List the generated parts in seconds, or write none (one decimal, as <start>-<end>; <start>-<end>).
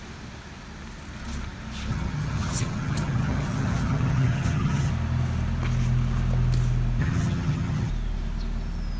1.9-4.9; 7.0-7.9